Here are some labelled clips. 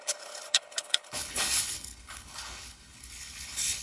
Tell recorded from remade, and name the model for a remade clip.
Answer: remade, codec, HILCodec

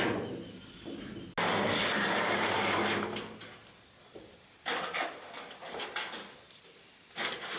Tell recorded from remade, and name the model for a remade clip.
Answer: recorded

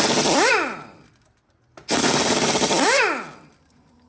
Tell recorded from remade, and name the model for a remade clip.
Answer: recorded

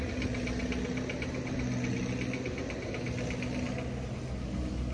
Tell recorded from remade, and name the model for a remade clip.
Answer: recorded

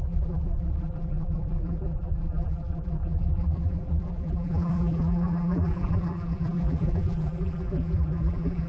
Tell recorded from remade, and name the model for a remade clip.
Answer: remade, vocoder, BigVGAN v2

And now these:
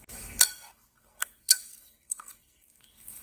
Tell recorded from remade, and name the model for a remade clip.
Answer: remade, codec, SNAC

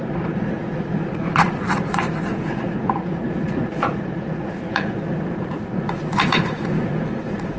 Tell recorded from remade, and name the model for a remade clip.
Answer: remade, vocoder, Vocos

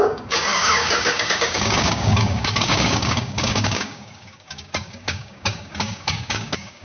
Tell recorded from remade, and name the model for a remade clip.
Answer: remade, codec, DAC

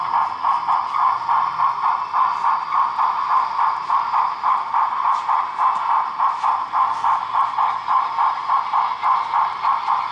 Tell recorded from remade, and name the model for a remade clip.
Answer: recorded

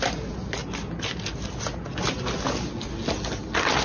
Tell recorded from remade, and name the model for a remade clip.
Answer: recorded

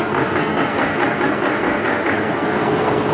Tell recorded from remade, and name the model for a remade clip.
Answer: remade, codec, SNAC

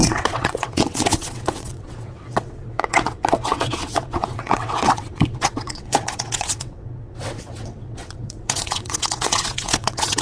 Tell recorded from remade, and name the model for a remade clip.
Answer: remade, vocoder, WaveNeXt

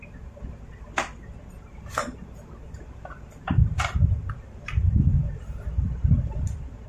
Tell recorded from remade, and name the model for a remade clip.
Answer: remade, vocoder, BigVGAN v2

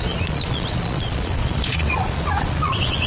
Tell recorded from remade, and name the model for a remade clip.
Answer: remade, vocoder, Vocos